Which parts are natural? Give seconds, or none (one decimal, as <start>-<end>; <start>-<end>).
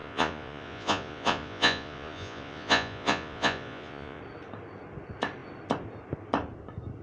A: 4.2-7.0